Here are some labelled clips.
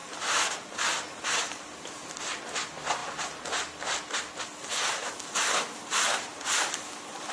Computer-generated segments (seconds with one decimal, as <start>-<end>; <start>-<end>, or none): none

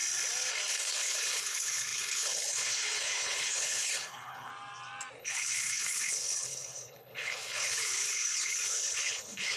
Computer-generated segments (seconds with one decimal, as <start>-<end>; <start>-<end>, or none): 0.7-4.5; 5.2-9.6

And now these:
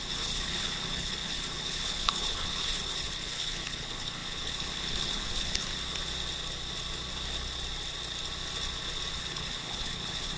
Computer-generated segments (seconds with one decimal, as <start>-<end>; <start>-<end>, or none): 0.0-5.7; 9.1-10.4